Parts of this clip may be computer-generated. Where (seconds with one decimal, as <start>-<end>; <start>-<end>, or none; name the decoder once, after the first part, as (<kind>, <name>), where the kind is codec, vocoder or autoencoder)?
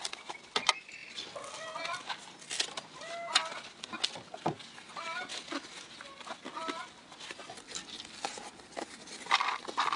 none